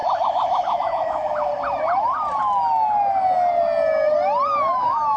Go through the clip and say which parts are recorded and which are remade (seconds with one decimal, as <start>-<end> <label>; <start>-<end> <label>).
0.0-1.5 remade; 1.5-4.6 recorded; 4.6-5.2 remade